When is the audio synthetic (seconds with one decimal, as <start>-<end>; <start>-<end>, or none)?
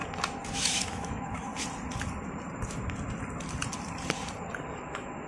0.5-1.5; 4.7-5.3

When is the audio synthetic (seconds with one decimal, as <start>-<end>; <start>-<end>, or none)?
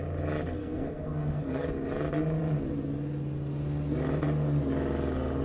0.6-1.7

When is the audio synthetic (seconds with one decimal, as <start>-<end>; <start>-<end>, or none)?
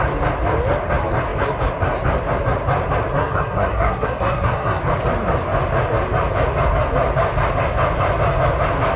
3.1-4.8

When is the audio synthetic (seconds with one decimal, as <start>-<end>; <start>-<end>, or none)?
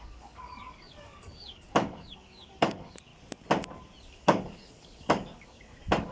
0.0-3.1; 4.1-6.1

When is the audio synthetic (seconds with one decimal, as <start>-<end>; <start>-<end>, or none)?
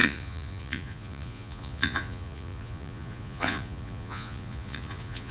0.0-5.3